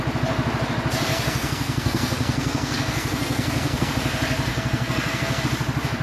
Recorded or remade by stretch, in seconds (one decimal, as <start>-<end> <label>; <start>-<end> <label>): 0.0-1.1 recorded; 1.1-3.9 remade; 3.9-4.5 recorded; 4.5-5.4 remade; 5.4-6.0 recorded